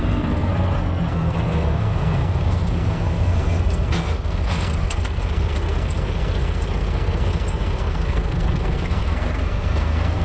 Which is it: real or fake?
fake